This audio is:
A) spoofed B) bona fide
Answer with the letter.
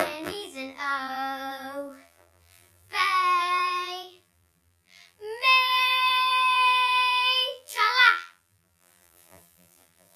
A